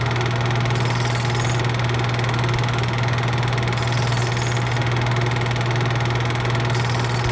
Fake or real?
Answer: real